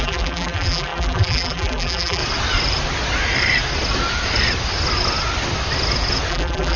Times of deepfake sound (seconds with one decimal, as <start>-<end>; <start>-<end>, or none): 0.0-2.2; 6.3-6.8